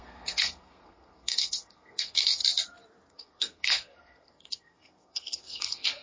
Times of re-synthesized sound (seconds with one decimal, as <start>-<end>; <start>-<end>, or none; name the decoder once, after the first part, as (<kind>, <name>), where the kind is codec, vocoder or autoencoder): 0.0-2.4 (codec, SNAC); 3.1-6.0